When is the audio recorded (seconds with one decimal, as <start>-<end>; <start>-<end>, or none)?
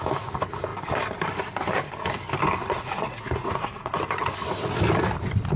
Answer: 0.0-2.6; 4.0-5.6